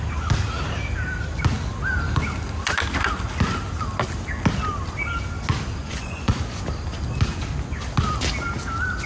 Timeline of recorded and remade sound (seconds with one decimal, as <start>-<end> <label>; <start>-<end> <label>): 0.0-5.8 recorded; 5.8-6.4 remade; 6.4-9.1 recorded